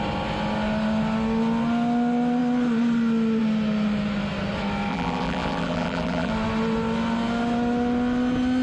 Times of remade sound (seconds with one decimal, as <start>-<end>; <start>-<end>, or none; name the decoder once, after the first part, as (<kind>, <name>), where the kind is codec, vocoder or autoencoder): 4.9-6.3 (vocoder, BigVGAN v2)